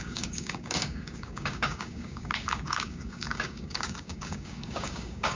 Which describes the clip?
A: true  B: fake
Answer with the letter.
B